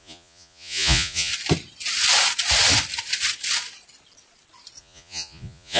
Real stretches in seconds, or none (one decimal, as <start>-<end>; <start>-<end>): 1.3-4.8